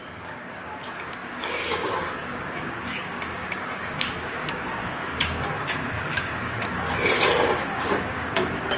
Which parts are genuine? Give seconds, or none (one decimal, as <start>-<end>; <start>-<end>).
6.7-7.6